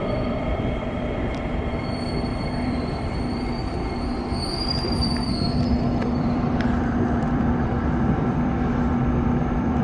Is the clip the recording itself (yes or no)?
no